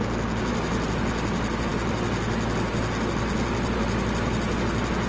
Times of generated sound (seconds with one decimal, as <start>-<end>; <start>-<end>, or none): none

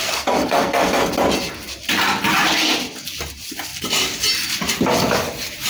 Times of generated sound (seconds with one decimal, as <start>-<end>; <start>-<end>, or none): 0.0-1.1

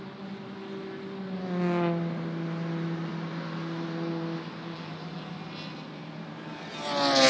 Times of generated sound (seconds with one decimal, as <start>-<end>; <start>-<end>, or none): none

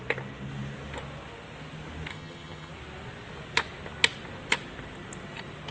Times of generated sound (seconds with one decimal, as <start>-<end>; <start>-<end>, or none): 2.1-2.7

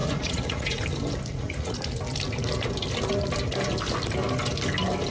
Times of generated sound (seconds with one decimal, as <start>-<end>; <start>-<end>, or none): 0.0-0.8; 1.3-1.8

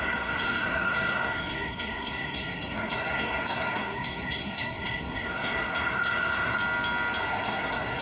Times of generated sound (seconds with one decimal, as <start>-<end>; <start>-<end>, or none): 0.0-6.6; 7.2-8.0

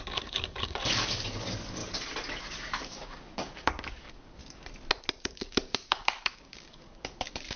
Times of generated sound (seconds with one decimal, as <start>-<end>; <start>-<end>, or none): 0.0-1.8; 2.4-4.4; 5.2-7.6

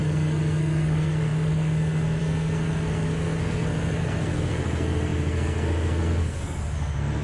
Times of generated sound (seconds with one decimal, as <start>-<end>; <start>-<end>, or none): 0.0-7.2